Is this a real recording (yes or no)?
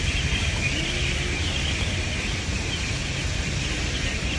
yes